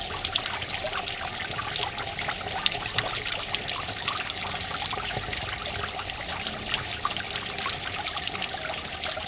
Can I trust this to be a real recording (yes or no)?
yes